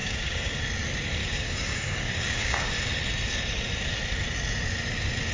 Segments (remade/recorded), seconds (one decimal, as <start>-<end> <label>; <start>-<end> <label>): 0.0-0.6 remade; 0.6-1.2 recorded; 1.2-2.7 remade; 2.7-5.3 recorded